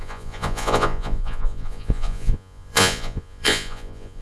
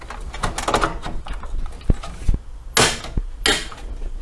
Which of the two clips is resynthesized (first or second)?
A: first